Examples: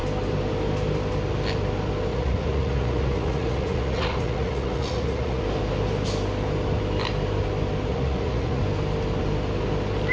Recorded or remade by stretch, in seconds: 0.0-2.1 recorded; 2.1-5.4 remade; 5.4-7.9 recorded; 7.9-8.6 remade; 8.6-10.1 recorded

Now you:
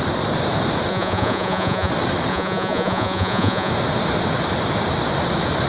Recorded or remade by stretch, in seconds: 0.0-0.9 recorded; 0.9-1.9 remade; 1.9-2.3 recorded; 2.3-3.7 remade; 3.7-5.7 recorded

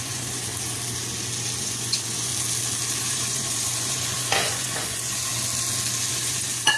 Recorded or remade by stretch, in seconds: 0.0-0.5 remade; 0.5-1.6 recorded; 1.6-2.3 remade; 2.3-3.0 recorded; 3.0-5.3 remade; 5.3-6.1 recorded; 6.1-6.8 remade

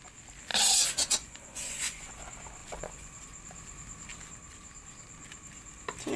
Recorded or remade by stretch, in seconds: 0.0-0.5 recorded; 0.5-2.1 remade; 2.1-2.6 recorded; 2.6-3.2 remade; 3.2-6.2 recorded

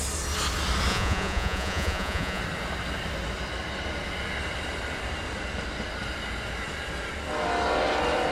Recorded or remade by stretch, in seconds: 0.0-0.9 recorded; 0.9-2.4 remade; 2.4-8.3 recorded

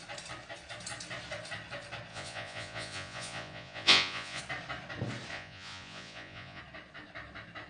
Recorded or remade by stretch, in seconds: 0.0-2.1 recorded; 2.1-4.4 remade; 4.4-5.3 recorded; 5.3-6.6 remade; 6.6-7.7 recorded